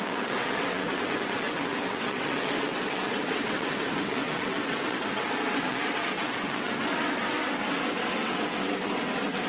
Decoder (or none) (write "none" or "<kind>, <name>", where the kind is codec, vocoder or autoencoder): vocoder, WaveNeXt